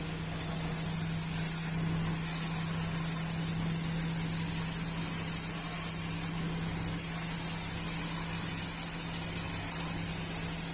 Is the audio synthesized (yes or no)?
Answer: no